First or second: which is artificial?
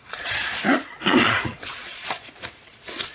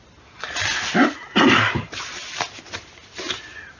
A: first